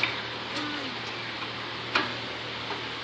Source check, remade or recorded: recorded